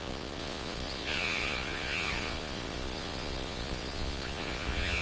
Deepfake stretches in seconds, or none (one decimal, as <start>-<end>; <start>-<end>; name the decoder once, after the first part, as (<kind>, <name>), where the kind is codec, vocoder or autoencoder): 0.0-5.0 (vocoder, Vocos)